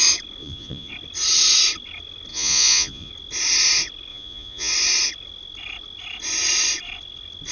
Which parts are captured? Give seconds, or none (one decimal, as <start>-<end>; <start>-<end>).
0.0-0.4; 0.9-2.3; 3.1-4.1; 4.7-7.5

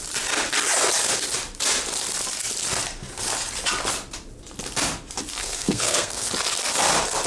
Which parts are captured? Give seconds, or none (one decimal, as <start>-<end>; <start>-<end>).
0.0-5.4; 6.3-7.3

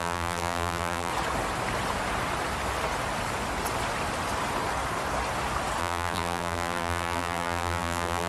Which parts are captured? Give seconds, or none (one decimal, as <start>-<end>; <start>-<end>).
1.1-5.8

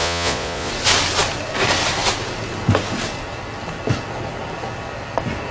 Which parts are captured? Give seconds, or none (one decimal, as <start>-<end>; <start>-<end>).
0.7-5.5

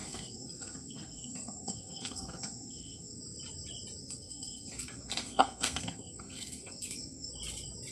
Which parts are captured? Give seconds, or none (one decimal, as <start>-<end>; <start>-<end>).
3.2-4.0; 7.3-7.9

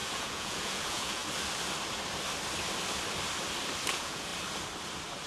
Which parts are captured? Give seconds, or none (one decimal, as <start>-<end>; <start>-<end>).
1.2-3.9; 4.3-5.3

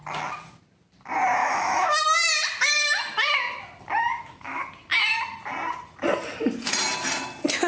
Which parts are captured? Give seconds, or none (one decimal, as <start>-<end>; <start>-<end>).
0.0-1.4; 2.0-4.1; 4.6-7.7

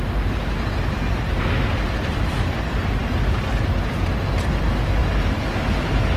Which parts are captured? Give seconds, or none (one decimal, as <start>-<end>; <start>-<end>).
0.0-1.3; 2.4-3.0; 3.5-5.0; 5.6-6.2